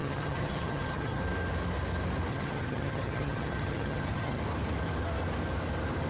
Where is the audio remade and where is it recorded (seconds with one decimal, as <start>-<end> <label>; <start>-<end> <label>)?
0.0-1.2 remade; 1.2-2.3 recorded; 2.3-4.4 remade; 4.4-6.1 recorded